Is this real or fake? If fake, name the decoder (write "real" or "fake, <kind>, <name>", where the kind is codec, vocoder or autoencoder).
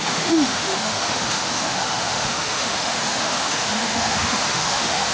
fake, autoencoder, DAC-VAE